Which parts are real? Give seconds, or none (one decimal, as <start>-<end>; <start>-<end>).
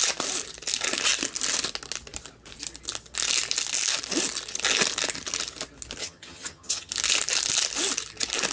0.0-6.0; 6.9-8.5